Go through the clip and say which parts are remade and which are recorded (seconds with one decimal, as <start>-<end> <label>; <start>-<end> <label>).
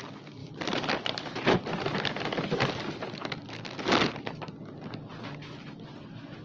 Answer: 0.0-6.4 recorded